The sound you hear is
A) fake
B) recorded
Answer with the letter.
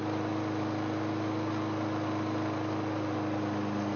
B